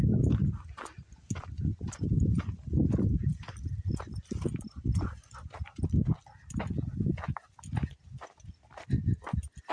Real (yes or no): yes